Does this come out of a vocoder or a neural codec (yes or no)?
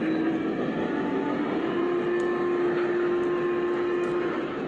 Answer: no